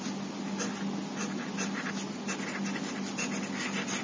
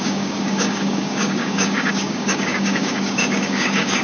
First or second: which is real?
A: first